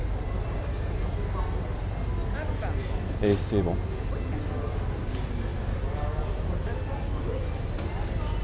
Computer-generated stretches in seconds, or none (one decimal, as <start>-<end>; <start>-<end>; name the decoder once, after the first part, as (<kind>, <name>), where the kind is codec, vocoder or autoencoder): none